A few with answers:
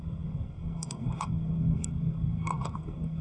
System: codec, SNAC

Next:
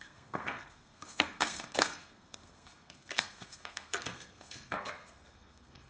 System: codec, SNAC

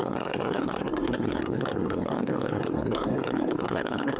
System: codec, SNAC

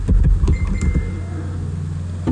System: none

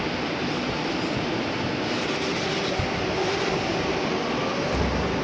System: none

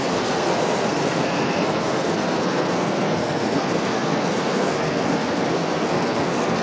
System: codec, SNAC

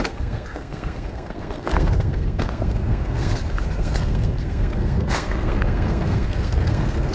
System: codec, SNAC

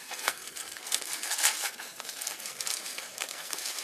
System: codec, SNAC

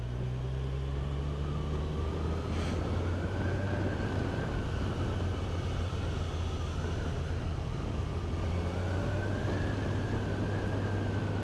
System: none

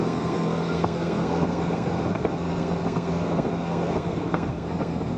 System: codec, SNAC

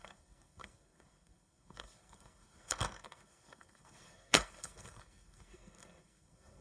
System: codec, SNAC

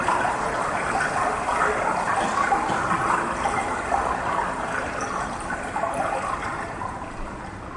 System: none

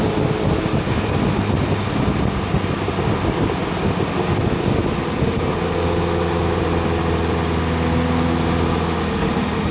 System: none